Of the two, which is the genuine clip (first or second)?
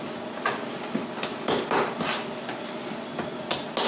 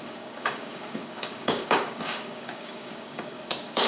first